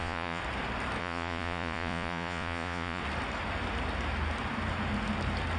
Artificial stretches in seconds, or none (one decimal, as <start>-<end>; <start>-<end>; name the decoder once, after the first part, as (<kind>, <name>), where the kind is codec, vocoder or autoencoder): 0.0-0.4 (vocoder, Vocos); 1.0-3.0